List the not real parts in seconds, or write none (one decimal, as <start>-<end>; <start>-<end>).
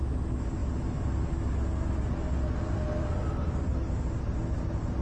none